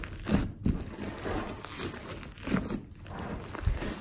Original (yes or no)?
yes